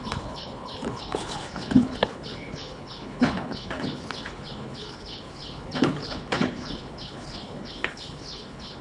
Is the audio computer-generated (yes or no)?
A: yes